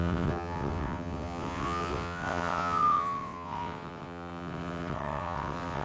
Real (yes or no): no